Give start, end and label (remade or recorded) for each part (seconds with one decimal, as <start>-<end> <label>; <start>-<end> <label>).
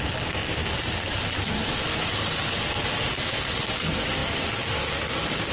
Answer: 0.0-5.5 recorded